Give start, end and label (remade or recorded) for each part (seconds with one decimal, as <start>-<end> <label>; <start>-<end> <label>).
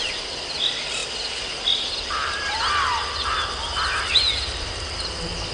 0.0-5.5 recorded